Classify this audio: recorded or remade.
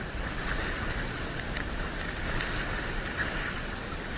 recorded